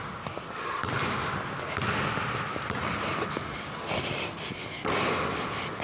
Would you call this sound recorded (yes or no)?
yes